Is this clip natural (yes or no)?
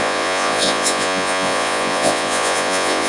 no